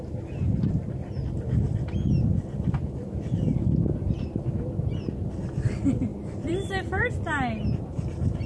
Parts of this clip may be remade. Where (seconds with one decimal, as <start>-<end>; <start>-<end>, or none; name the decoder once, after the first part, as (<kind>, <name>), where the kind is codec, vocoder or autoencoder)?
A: 6.1-7.1 (vocoder, BigVGAN v2)